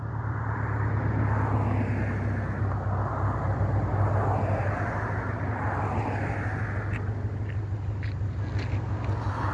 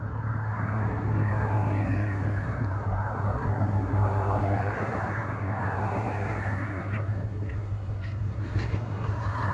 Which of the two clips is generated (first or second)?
second